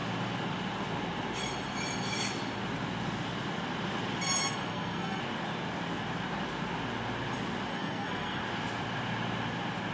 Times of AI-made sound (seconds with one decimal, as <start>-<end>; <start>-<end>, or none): 4.7-5.2; 7.7-8.4